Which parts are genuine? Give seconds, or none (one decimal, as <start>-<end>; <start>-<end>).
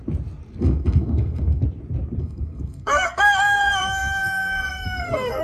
0.0-0.6; 1.6-2.2